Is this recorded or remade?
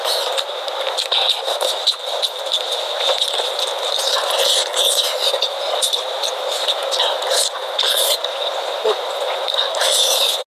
recorded